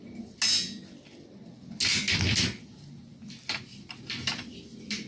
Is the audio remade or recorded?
recorded